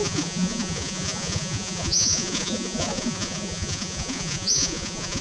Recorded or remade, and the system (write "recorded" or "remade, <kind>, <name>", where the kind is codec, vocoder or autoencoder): remade, vocoder, Vocos